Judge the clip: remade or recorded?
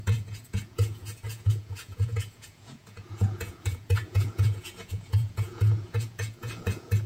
remade